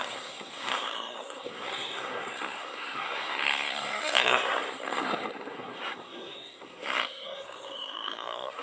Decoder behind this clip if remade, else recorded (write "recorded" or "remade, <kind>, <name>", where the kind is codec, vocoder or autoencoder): remade, codec, SNAC